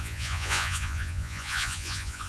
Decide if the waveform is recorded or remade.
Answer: remade